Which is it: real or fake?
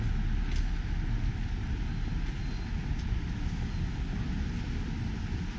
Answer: real